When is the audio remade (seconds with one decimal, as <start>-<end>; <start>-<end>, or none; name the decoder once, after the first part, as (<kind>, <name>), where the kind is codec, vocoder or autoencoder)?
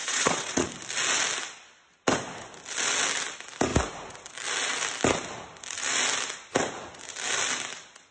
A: 0.0-0.7 (vocoder, WaveNeXt)